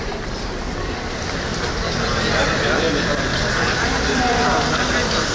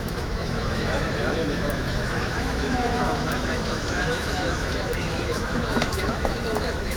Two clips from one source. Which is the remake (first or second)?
second